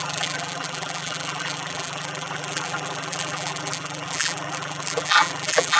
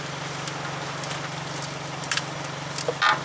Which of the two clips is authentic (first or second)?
second